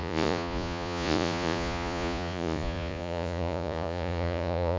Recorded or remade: remade